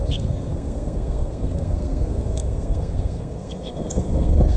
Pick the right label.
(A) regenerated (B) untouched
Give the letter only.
A